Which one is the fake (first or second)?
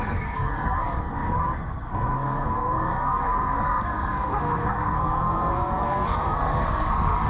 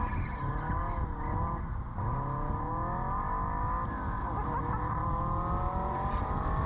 first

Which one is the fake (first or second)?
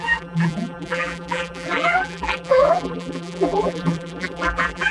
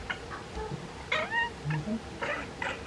first